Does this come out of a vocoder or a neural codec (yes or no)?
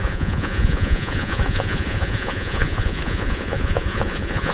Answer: yes